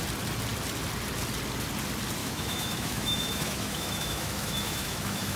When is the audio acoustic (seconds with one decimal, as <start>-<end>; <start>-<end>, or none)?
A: 0.0-2.2